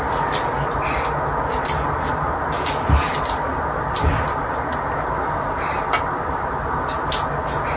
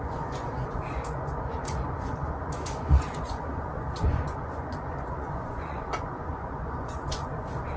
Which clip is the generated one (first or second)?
second